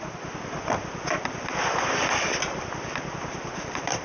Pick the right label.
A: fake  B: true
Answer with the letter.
B